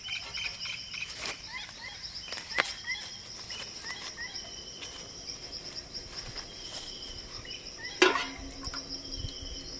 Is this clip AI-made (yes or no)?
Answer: no